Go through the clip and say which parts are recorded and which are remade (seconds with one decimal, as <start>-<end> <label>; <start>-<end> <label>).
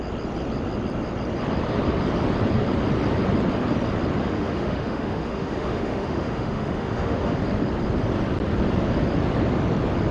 0.0-4.2 recorded; 4.2-7.4 remade; 7.4-10.1 recorded